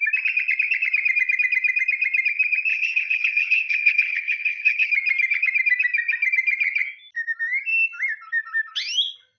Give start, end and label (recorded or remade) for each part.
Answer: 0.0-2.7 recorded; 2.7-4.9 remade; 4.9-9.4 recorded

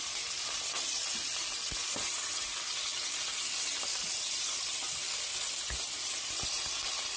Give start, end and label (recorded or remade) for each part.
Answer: 0.0-7.2 remade

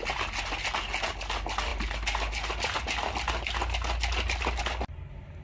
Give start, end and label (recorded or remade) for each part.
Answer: 0.0-5.4 recorded

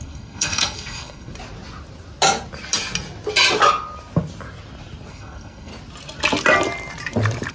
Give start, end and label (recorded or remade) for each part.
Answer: 0.0-1.3 remade; 1.3-5.1 recorded; 5.1-5.7 remade; 5.7-7.5 recorded

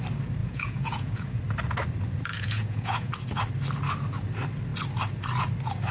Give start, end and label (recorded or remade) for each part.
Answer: 0.0-0.4 recorded; 0.4-1.4 remade; 1.4-2.3 recorded; 2.3-3.1 remade; 3.1-5.9 recorded